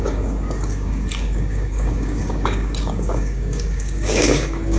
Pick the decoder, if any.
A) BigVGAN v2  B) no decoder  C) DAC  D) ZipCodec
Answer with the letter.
C